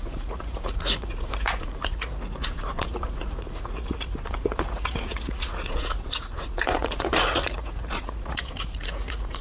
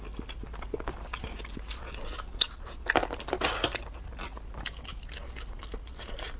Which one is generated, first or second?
first